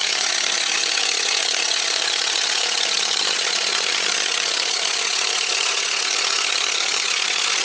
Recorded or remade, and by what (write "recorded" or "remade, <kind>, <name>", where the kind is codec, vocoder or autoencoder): remade, vocoder, HiFi-GAN